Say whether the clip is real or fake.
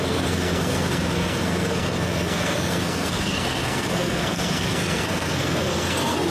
fake